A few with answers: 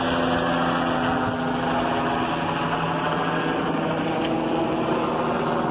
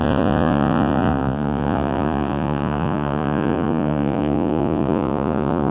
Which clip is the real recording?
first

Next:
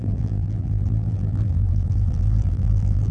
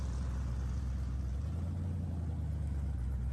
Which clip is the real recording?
second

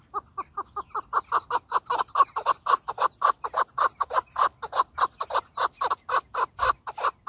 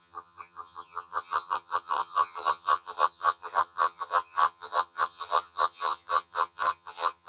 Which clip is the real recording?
first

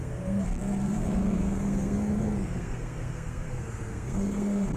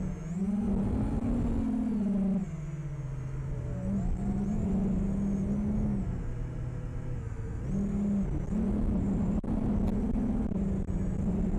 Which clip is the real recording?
second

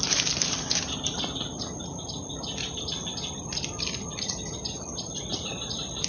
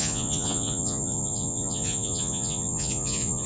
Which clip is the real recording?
first